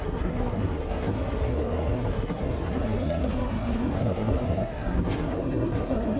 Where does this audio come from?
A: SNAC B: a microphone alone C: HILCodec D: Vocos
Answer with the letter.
A